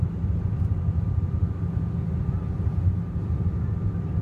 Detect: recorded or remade recorded